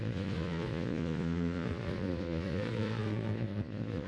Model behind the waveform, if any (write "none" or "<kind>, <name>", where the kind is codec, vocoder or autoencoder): vocoder, Vocos